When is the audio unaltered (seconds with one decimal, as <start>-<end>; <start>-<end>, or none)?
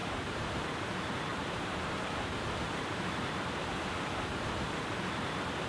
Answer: 0.6-1.3; 3.1-5.7